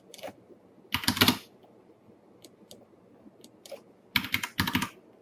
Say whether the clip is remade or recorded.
recorded